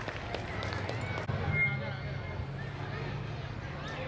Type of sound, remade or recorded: recorded